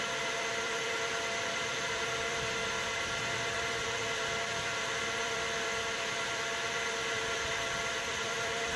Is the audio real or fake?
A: fake